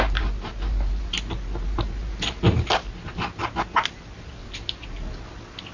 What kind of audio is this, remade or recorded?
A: recorded